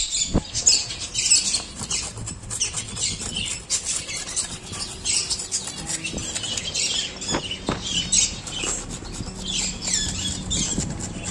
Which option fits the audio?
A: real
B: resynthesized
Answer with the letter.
A